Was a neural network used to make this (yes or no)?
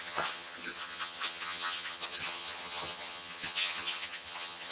yes